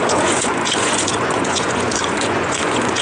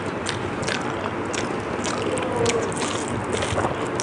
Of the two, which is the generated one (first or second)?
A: first